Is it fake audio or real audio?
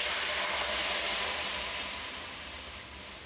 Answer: real